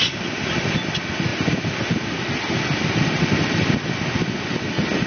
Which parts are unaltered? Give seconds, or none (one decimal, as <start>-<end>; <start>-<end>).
0.0-5.1